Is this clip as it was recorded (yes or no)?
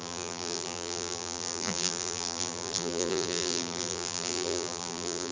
no